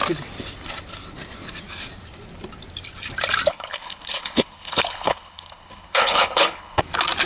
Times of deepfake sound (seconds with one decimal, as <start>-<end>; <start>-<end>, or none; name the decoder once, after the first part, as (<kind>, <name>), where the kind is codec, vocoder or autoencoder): 3.5-6.8 (codec, HILCodec)